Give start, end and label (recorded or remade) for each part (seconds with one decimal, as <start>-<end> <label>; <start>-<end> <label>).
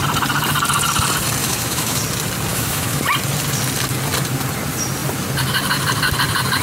0.0-1.4 recorded; 1.4-2.0 remade; 2.0-2.5 recorded; 2.5-3.0 remade; 3.0-6.6 recorded